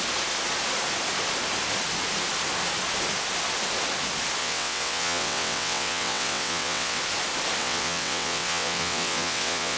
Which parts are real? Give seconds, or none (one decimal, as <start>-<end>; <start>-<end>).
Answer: 0.0-4.4; 7.0-7.6